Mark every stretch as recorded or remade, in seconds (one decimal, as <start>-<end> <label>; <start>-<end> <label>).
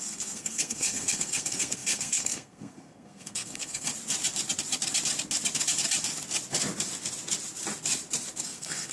0.0-3.9 remade; 3.9-8.4 recorded; 8.4-8.9 remade